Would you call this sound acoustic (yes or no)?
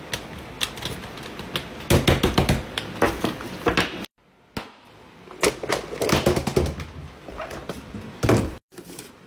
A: yes